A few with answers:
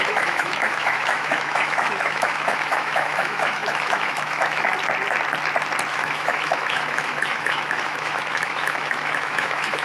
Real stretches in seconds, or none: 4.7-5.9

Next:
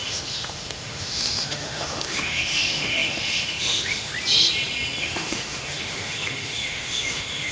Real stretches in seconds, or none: 4.1-5.0

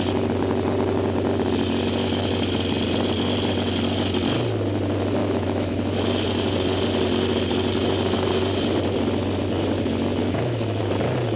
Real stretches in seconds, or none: 0.0-5.2; 5.7-10.2; 10.8-11.4

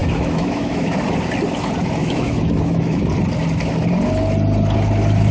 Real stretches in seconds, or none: 0.9-2.0; 3.0-5.3

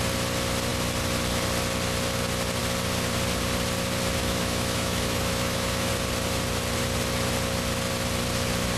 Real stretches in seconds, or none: 0.0-4.2; 5.9-8.8

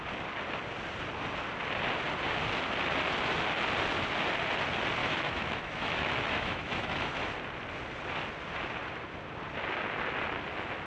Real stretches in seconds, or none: 0.0-5.0; 7.2-10.9

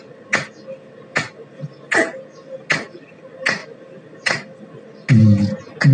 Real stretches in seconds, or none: 0.0-5.9